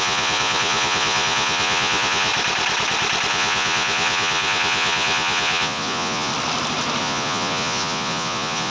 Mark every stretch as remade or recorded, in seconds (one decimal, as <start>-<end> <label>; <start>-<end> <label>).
0.0-2.3 remade; 2.3-3.3 recorded; 3.3-6.3 remade; 6.3-7.0 recorded; 7.0-8.7 remade